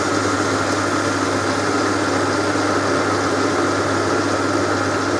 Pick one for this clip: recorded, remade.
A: recorded